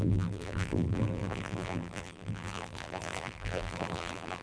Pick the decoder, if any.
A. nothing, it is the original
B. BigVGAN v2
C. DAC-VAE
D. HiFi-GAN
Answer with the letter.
B